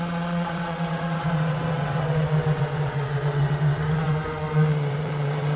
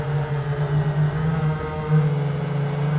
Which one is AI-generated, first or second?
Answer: first